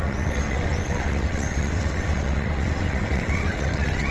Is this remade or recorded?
remade